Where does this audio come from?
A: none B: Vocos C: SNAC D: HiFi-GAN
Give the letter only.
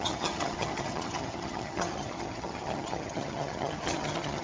D